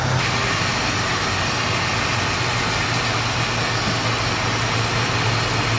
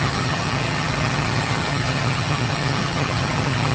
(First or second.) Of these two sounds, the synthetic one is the second